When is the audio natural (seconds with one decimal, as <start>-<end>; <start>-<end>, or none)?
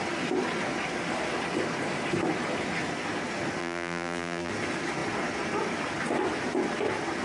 0.0-3.6; 4.5-7.2